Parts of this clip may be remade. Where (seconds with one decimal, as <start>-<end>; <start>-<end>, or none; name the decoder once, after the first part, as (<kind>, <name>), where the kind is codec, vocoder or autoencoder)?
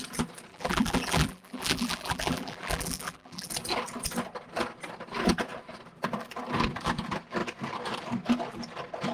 0.5-3.5 (vocoder, BigVGAN v2)